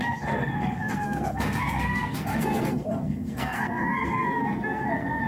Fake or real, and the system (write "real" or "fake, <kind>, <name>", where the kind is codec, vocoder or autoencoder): fake, codec, SNAC